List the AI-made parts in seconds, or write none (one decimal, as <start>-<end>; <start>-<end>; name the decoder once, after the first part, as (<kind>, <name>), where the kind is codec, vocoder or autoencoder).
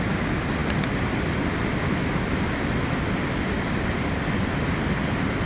none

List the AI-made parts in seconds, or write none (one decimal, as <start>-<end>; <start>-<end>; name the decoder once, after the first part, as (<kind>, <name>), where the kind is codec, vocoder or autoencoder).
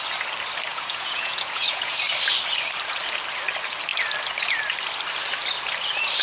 0.7-2.0 (vocoder, Vocos)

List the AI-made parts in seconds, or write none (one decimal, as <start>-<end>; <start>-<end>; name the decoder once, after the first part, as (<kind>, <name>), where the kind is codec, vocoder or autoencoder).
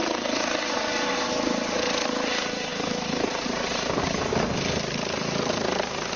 none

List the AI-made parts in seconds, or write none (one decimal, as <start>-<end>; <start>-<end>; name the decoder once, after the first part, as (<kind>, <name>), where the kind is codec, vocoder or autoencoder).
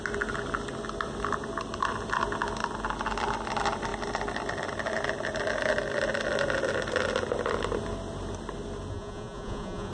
8.9-9.9 (vocoder, Vocos)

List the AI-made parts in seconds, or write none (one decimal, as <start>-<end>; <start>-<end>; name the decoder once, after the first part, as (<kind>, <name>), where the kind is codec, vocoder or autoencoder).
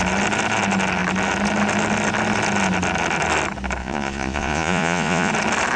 3.8-5.3 (vocoder, Vocos)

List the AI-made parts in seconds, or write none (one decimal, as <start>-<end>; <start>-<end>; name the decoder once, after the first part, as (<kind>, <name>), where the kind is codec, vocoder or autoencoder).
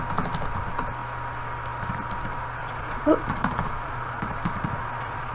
2.6-5.3 (vocoder, Vocos)